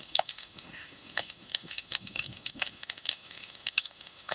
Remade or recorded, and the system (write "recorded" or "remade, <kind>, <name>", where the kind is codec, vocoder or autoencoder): remade, autoencoder, DAC-VAE